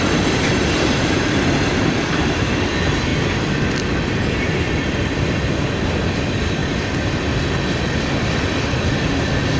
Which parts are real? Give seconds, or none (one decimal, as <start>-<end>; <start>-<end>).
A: 3.1-4.4; 6.6-8.8